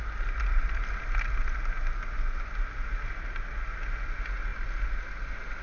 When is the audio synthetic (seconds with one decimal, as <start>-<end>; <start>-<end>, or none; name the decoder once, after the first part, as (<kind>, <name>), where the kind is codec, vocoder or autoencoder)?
none